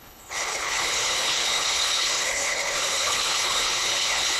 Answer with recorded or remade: remade